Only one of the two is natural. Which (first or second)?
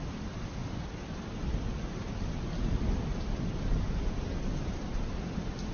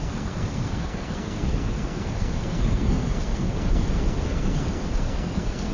first